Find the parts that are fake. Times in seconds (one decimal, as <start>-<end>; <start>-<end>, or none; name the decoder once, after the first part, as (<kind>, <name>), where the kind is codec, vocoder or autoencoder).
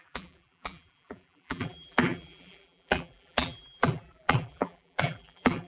0.0-5.7 (vocoder, BigVGAN v2)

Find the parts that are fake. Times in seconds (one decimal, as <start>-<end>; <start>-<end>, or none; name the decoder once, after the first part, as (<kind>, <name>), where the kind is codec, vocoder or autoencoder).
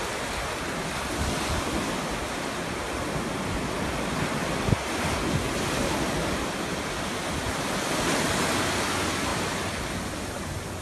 none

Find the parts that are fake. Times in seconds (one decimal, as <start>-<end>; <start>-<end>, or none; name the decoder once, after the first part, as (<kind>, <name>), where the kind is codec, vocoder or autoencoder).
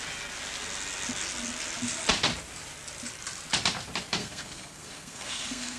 4.2-5.8 (codec, SNAC)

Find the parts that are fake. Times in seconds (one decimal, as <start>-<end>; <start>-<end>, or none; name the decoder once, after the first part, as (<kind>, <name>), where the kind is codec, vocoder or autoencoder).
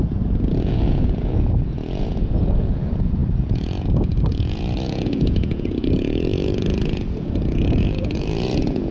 0.0-8.9 (vocoder, Vocos)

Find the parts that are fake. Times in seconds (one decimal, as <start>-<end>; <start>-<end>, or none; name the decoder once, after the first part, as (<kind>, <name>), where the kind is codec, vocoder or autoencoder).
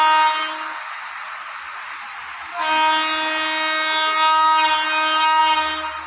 none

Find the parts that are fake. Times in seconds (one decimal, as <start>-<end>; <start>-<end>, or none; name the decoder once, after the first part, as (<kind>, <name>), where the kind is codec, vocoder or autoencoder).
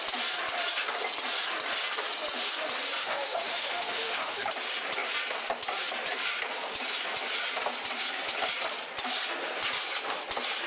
3.0-4.5 (autoencoder, DAC-VAE)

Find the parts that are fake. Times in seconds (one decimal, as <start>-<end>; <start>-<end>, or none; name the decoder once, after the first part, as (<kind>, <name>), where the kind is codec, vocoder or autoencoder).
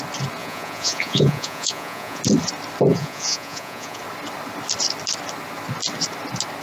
0.4-2.2 (vocoder, Vocos); 2.9-4.0